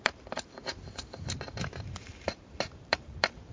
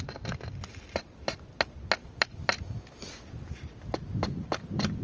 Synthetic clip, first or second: first